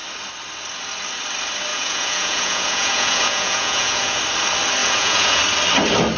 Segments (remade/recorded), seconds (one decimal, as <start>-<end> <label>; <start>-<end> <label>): 0.0-1.7 recorded; 1.7-4.2 remade; 4.2-4.8 recorded; 4.8-5.4 remade; 5.4-6.2 recorded